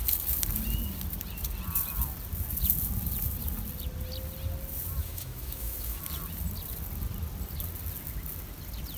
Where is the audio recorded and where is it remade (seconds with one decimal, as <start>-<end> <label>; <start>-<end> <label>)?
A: 0.0-5.0 recorded; 5.0-6.0 remade; 6.0-9.0 recorded